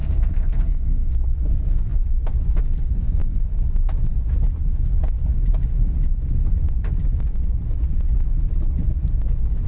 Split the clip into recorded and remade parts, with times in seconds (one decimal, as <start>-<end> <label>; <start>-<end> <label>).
0.0-1.1 remade; 1.1-9.7 recorded